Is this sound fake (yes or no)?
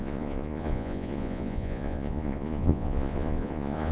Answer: yes